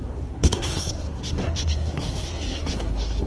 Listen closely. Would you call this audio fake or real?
fake